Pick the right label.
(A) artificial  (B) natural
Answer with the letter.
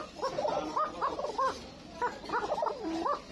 A